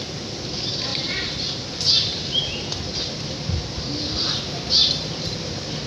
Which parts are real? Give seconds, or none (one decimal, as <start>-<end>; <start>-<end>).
0.0-0.9; 1.7-2.1; 2.6-5.9